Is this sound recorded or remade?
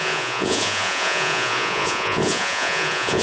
remade